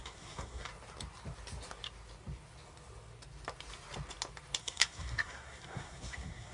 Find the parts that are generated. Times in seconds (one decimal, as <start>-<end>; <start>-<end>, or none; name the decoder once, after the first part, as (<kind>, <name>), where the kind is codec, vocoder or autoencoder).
0.0-0.7 (codec, SNAC); 4.6-6.5